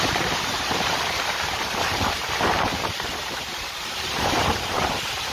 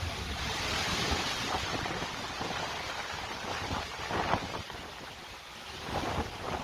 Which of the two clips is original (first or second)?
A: second